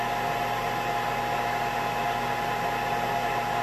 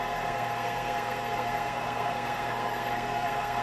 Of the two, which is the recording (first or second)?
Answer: first